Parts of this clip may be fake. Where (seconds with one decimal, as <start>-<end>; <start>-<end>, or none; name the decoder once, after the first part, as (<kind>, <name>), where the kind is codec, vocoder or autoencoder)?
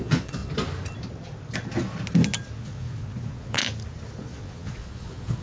0.0-0.4 (vocoder, Vocos); 2.6-3.6; 4.2-5.4